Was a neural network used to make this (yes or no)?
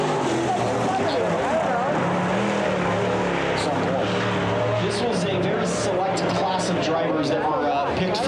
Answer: no